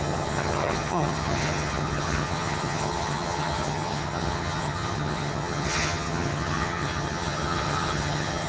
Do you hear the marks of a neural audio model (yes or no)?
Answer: yes